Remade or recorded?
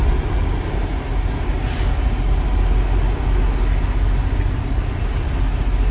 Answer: recorded